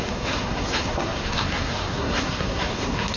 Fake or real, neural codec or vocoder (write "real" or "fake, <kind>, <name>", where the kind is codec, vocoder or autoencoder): fake, codec, SNAC